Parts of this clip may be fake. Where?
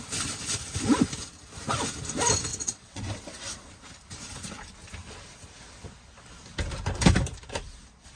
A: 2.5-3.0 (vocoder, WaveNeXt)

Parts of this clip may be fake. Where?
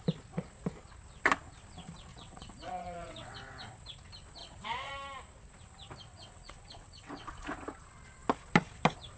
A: 2.1-3.7 (vocoder, WaveNeXt); 4.4-4.9; 6.1-7.3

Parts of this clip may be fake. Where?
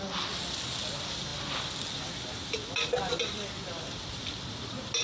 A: none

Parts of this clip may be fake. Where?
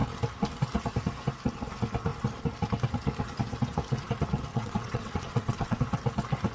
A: 4.5-5.8 (vocoder, WaveNeXt)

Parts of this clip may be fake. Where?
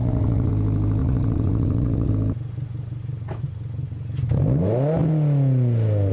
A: 0.0-0.5 (vocoder, WaveNeXt); 1.0-2.1